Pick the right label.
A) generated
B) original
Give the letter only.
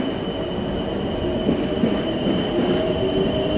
B